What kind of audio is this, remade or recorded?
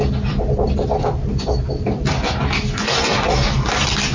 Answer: recorded